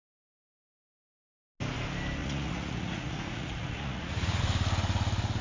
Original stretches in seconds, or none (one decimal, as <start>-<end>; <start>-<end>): 0.0-2.2; 4.4-5.4